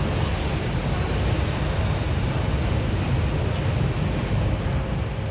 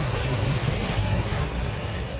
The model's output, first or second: second